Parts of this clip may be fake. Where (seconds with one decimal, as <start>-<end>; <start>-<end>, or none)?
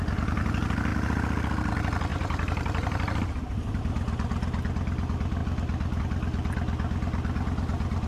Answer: 2.1-3.6